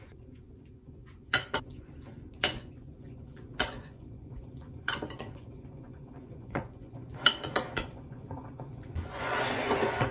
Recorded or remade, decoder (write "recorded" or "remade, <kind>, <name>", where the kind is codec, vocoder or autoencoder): remade, vocoder, Vocos